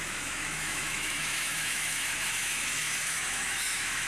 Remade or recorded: remade